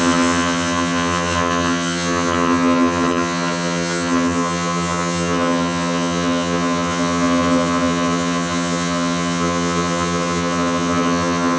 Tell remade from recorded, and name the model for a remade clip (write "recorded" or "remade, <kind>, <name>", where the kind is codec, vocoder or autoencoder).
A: remade, vocoder, HiFi-GAN